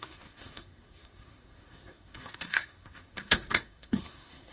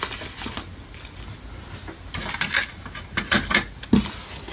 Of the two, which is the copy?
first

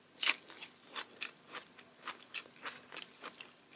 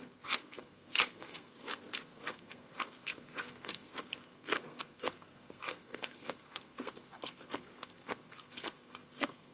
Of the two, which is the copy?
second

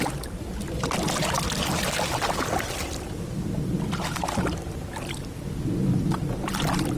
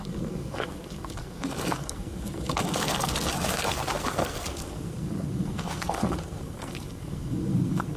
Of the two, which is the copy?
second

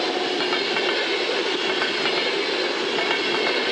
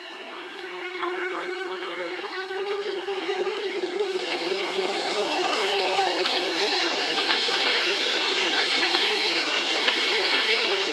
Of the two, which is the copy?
second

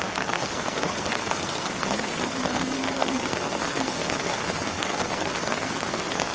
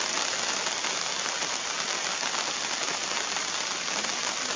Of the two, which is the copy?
first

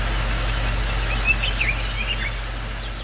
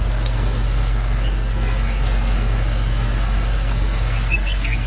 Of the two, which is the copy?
second